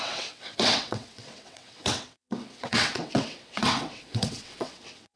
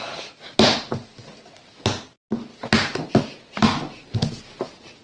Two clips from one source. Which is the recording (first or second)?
second